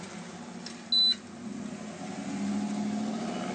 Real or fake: real